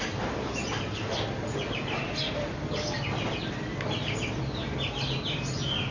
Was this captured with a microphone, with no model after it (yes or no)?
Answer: yes